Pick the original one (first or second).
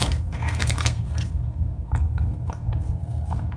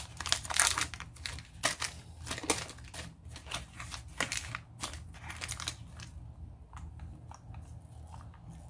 second